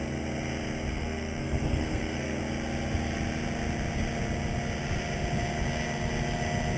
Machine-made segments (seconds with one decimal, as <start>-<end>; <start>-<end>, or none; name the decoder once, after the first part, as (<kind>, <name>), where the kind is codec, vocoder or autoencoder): 0.9-2.4 (codec, SNAC)